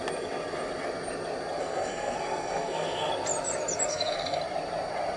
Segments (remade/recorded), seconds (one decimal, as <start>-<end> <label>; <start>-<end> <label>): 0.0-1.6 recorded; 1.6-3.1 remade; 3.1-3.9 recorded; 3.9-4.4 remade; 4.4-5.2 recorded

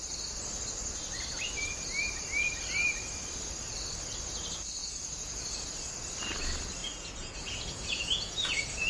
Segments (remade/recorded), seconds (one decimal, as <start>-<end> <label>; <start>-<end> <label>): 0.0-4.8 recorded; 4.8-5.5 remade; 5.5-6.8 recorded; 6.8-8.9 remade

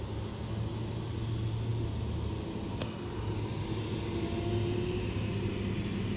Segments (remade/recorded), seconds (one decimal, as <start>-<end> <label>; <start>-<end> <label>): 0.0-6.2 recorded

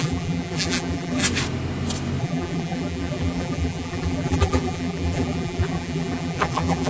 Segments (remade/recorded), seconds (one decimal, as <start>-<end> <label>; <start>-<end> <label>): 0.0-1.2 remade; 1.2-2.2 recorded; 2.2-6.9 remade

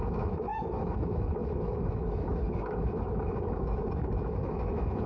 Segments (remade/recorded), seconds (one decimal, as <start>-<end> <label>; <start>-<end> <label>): 0.0-5.1 remade